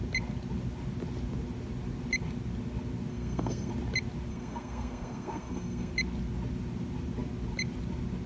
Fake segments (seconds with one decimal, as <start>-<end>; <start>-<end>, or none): 3.1-3.7; 4.3-5.9